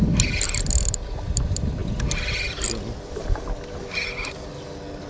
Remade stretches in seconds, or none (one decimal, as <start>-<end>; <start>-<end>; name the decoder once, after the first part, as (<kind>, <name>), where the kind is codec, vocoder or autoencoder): none